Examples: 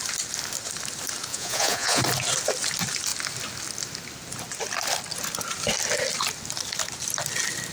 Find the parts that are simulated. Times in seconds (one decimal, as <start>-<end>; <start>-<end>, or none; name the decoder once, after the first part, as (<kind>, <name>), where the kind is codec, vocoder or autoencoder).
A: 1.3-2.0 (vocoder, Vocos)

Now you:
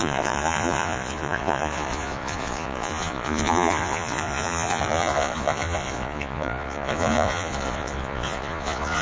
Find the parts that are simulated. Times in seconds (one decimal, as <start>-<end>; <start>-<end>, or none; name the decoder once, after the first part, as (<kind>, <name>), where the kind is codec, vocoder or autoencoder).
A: 0.0-9.0 (vocoder, Vocos)

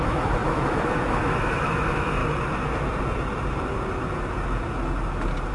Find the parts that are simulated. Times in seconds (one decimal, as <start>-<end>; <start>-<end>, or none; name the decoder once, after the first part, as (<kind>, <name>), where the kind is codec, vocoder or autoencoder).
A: 0.0-2.2 (autoencoder, DAC-VAE)

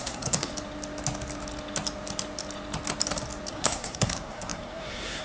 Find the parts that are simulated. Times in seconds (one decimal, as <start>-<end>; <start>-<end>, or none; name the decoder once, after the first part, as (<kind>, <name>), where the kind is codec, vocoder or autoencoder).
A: 0.0-0.5 (codec, SNAC); 3.5-5.2

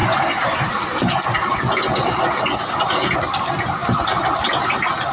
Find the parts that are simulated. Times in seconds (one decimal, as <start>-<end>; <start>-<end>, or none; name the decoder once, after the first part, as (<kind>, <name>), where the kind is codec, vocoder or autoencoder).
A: none

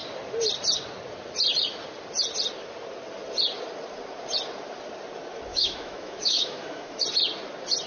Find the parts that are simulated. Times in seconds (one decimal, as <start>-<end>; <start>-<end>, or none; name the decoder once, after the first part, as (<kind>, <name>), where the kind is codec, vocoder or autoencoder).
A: 5.5-7.0 (autoencoder, DAC-VAE)

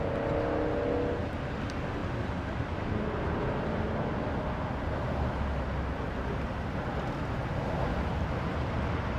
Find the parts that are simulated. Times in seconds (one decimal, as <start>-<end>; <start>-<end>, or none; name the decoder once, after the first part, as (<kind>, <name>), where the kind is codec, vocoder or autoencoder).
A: none